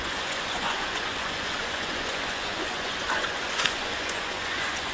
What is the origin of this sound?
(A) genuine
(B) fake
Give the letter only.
B